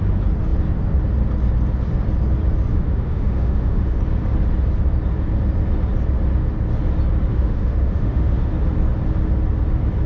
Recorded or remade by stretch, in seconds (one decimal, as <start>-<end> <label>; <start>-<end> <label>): 0.0-2.7 recorded; 2.7-4.0 remade; 4.0-7.3 recorded; 7.3-8.5 remade; 8.5-10.1 recorded